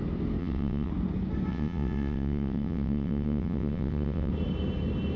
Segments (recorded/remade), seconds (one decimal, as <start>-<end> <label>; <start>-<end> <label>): 0.0-0.4 recorded; 0.4-0.9 remade; 0.9-1.5 recorded; 1.5-4.3 remade; 4.3-5.2 recorded